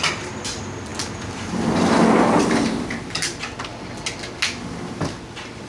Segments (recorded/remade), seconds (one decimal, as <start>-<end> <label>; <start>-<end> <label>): 0.0-5.7 recorded